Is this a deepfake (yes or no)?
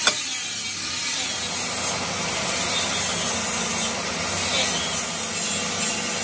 no